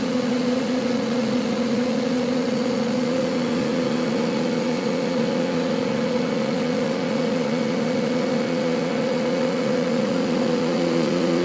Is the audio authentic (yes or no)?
no